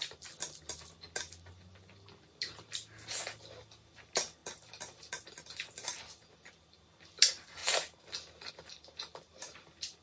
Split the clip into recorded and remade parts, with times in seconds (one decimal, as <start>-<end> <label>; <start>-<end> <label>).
0.0-10.0 recorded